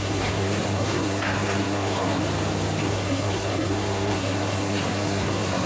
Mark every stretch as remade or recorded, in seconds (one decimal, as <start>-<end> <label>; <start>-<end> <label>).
0.0-2.2 remade; 2.2-2.8 recorded; 2.8-5.7 remade

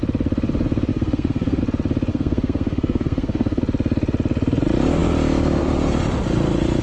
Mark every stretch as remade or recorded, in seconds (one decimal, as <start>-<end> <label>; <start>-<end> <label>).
0.0-0.9 recorded; 0.9-1.6 remade; 1.6-2.1 recorded; 2.1-3.6 remade; 3.6-6.8 recorded